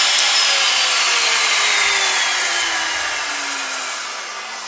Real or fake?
real